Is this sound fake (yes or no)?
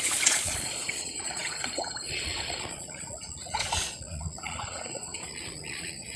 yes